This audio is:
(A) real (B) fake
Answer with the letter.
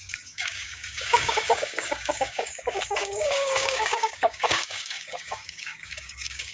B